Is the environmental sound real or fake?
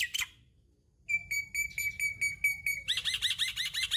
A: real